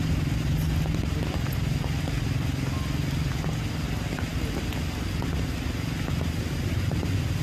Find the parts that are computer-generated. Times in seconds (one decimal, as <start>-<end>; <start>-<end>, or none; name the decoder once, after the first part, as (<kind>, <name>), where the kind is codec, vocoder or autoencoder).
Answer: none